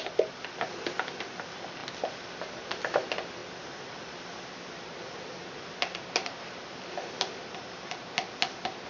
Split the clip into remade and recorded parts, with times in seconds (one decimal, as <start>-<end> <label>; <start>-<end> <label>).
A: 0.0-8.9 recorded